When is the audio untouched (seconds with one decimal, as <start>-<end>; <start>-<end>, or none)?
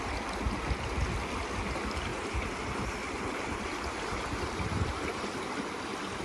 0.0-2.1; 5.7-6.2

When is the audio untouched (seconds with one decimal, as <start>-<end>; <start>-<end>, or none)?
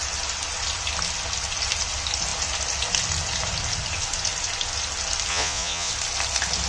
0.0-5.3; 5.9-6.7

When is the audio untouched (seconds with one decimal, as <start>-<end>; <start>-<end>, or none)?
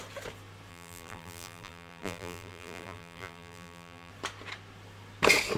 0.0-0.7; 4.1-5.6